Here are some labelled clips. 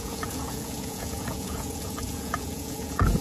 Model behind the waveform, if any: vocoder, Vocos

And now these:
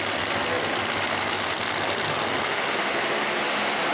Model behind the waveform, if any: none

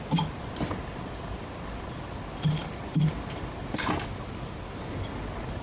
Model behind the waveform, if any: none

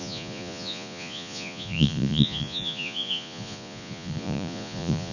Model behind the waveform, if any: vocoder, Vocos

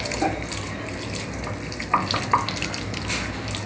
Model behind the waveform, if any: none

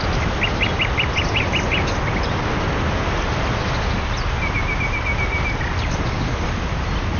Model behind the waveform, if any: none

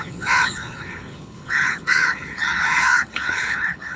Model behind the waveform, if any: codec, HILCodec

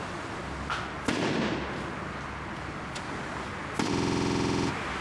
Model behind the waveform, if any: none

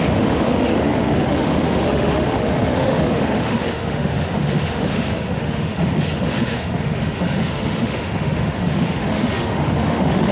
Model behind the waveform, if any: autoencoder, DAC-VAE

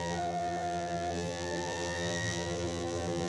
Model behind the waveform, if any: vocoder, BigVGAN v2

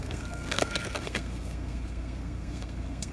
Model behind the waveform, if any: codec, SNAC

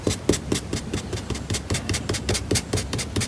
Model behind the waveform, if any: none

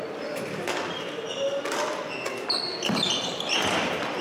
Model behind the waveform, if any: none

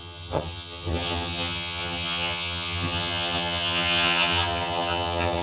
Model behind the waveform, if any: vocoder, HiFi-GAN